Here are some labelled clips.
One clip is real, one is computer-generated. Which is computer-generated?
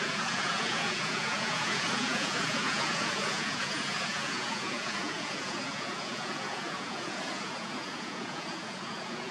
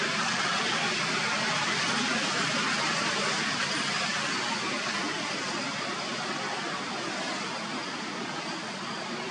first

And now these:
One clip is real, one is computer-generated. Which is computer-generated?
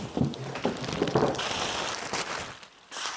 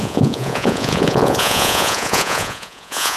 second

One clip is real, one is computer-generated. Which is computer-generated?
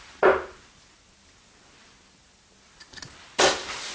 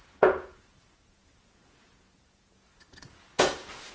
second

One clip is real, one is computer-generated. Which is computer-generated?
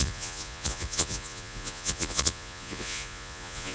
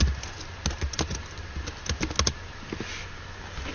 first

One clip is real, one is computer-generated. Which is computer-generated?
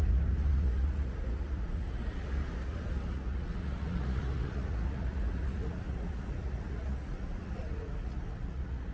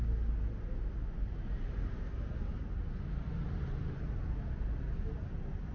first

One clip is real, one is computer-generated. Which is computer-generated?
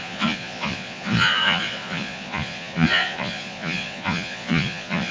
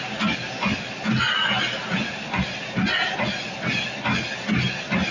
first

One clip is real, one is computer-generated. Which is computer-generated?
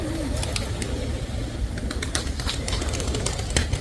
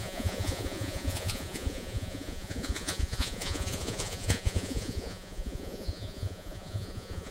second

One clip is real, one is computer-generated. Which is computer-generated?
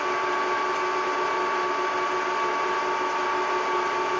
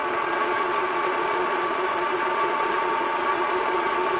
second